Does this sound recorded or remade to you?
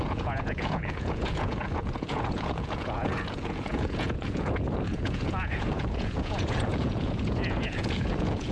remade